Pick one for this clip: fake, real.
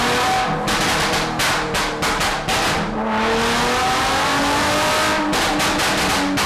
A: real